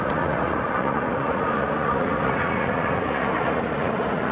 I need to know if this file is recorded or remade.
remade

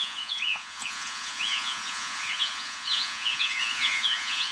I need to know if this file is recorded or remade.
remade